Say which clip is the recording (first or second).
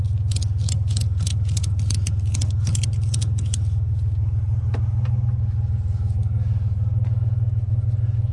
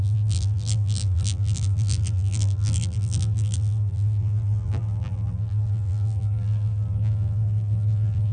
first